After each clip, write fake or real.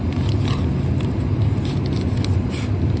real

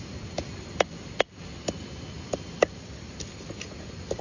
real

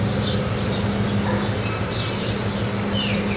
real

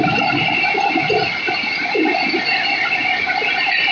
real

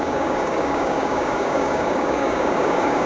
fake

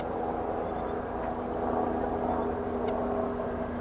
real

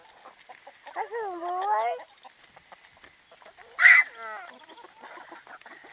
real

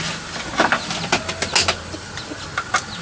real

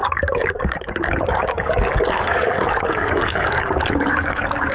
fake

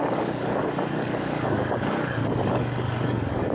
fake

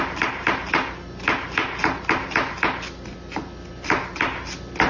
real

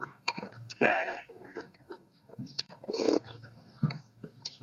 fake